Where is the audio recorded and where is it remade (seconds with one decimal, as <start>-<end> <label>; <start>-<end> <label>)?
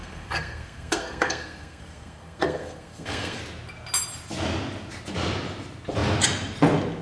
0.0-3.4 remade; 3.4-7.0 recorded